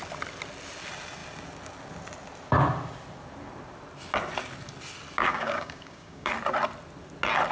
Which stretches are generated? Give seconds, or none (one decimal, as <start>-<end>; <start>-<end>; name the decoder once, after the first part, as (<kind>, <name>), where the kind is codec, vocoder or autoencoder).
5.3-6.3 (codec, DAC)